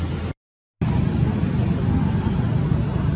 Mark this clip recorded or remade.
recorded